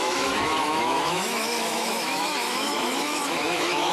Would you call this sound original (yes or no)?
no